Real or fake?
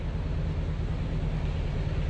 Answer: real